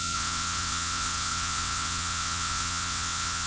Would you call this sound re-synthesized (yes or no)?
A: yes